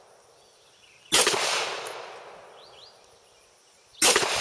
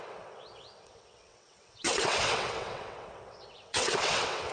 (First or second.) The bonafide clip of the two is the first